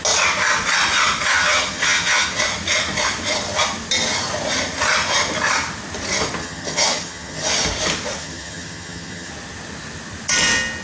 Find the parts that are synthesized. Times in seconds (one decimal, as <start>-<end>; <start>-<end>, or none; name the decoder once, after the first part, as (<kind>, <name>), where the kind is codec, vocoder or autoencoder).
1.3-2.4 (vocoder, HiFi-GAN); 6.4-7.5; 8.2-9.3